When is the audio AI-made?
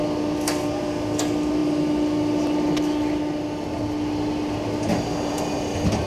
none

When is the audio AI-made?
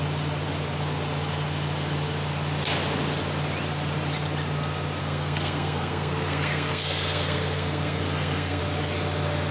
5.0-8.6 (codec, SNAC)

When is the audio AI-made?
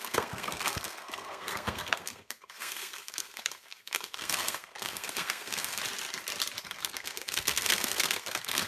0.0-5.8 (codec, SNAC); 6.6-8.7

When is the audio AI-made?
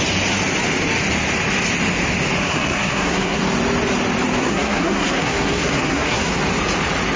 2.4-3.4 (codec, SNAC); 4.4-6.3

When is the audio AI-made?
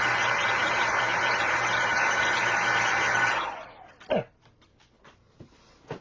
none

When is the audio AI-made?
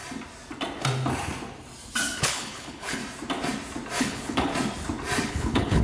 2.2-3.0 (codec, HILCodec); 4.0-4.5; 5.3-5.8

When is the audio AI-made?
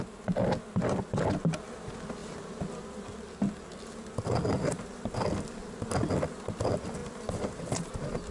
none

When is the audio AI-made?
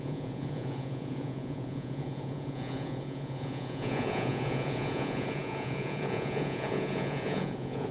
0.0-7.9 (vocoder, Vocos)